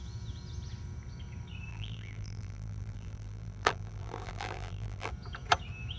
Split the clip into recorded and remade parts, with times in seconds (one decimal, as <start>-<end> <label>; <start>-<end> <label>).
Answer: 0.0-1.7 recorded; 1.7-5.1 remade; 5.1-6.0 recorded